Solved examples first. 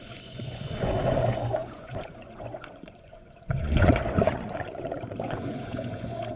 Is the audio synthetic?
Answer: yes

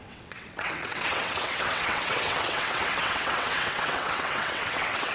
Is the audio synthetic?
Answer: yes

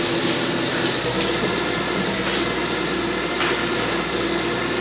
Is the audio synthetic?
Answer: no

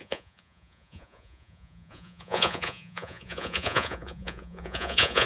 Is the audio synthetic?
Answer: yes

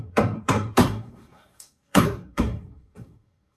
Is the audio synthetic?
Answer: yes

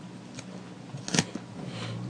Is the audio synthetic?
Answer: no